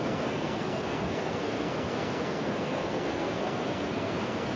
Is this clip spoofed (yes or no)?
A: yes